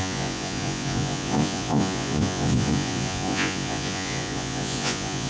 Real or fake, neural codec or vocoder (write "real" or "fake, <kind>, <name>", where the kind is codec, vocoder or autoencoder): fake, vocoder, Vocos